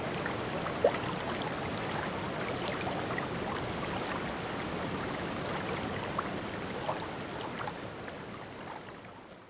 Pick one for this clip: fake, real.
real